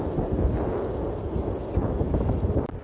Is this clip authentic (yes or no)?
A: yes